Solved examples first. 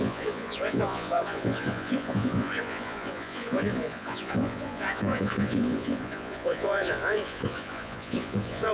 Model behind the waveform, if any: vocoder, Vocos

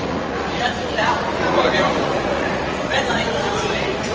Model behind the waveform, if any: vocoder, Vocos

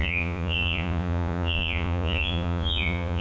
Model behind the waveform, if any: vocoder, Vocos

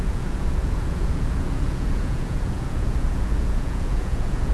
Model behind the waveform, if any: vocoder, Vocos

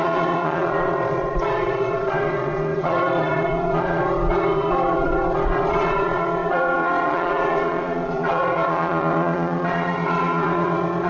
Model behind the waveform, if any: vocoder, Vocos